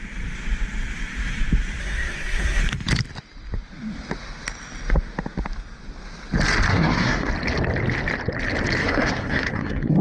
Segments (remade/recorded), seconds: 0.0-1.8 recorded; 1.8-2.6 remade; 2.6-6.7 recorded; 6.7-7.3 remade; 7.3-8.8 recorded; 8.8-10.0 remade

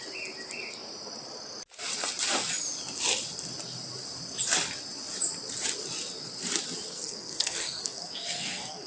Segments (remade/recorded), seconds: 0.0-6.9 recorded; 6.9-8.9 remade

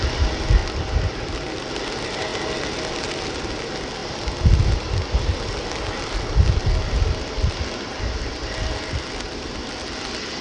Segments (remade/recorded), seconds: 0.0-10.4 recorded

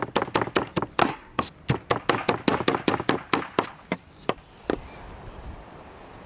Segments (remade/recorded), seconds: 0.0-1.0 recorded; 1.0-1.5 remade; 1.5-6.3 recorded

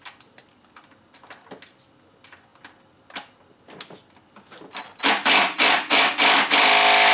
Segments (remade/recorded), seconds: 0.0-7.1 recorded

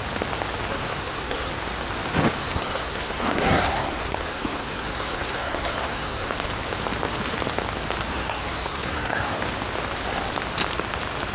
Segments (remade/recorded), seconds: 0.0-0.7 recorded; 0.7-1.5 remade; 1.5-2.4 recorded; 2.4-6.3 remade; 6.3-8.1 recorded; 8.1-9.4 remade; 9.4-11.3 recorded

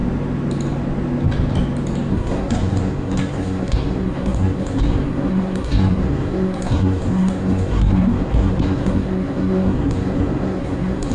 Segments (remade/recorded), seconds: 0.0-2.1 recorded; 2.1-11.1 remade

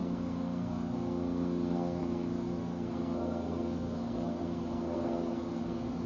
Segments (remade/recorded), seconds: 0.0-6.1 remade